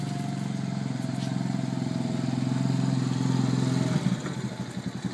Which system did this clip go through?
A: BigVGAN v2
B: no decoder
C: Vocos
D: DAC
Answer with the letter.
B